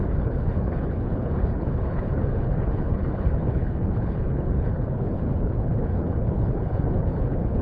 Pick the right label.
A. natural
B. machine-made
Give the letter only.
B